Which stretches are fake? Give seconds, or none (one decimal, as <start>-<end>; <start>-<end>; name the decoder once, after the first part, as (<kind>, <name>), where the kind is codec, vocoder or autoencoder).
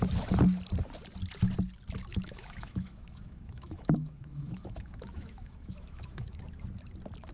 2.1-6.4 (autoencoder, DAC-VAE)